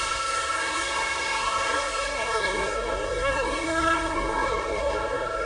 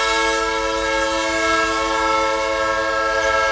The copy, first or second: first